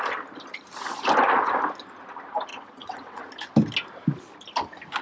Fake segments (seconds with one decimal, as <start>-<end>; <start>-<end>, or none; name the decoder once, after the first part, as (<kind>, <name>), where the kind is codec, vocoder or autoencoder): 2.5-3.2 (vocoder, WaveNeXt)

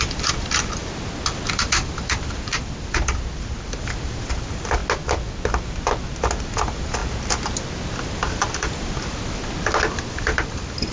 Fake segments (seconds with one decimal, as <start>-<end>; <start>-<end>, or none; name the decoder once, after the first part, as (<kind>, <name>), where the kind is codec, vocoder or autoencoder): 0.0-0.8 (vocoder, BigVGAN v2); 1.5-4.8; 6.4-7.0; 8.0-9.4; 10.1-10.9

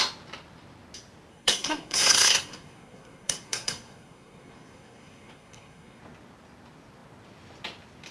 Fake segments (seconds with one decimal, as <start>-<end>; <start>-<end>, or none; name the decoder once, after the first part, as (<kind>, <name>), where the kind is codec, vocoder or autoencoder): 1.3-6.0 (codec, SNAC)

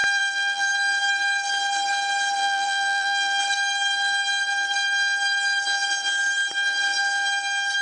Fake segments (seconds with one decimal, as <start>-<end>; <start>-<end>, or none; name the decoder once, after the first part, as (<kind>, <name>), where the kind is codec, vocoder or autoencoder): 0.0-0.7 (vocoder, BigVGAN v2); 2.4-3.4

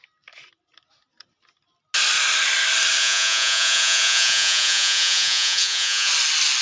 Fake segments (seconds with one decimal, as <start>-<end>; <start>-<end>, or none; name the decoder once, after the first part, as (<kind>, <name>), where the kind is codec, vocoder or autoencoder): 3.0-6.1 (vocoder, Vocos)